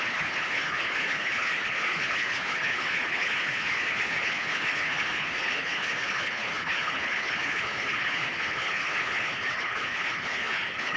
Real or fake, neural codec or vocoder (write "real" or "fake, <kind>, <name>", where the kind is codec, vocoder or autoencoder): fake, codec, HILCodec